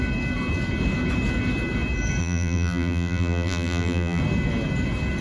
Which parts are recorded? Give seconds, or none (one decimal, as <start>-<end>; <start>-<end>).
0.0-2.2; 4.2-5.2